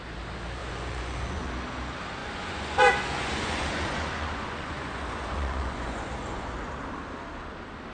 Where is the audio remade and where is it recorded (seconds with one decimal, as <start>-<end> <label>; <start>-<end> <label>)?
0.0-0.6 recorded; 0.6-1.5 remade; 1.5-2.2 recorded; 2.2-6.7 remade; 6.7-7.9 recorded